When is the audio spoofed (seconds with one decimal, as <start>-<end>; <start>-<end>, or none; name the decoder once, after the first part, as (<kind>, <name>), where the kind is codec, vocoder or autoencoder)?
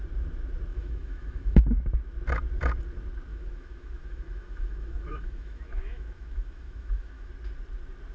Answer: 0.7-1.6 (autoencoder, DAC-VAE); 3.3-7.3